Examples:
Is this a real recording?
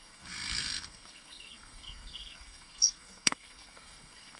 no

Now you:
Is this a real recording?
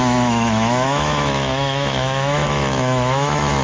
no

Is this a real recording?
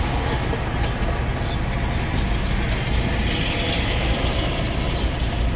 yes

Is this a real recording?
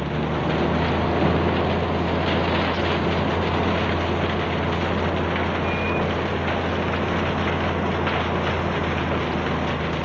yes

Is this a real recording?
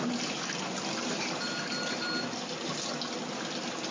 yes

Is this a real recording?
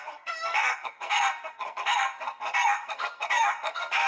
no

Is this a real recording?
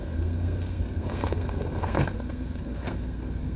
no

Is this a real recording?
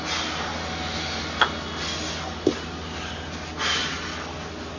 yes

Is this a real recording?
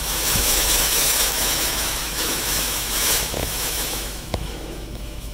no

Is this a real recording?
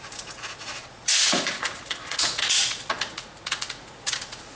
no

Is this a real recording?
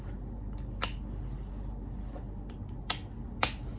yes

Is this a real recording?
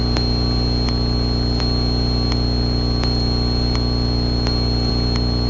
yes